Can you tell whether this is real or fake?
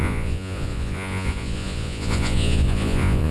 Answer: fake